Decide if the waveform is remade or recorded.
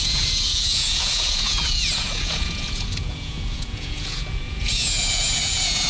remade